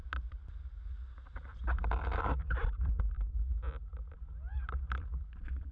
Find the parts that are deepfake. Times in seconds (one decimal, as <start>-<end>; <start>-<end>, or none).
none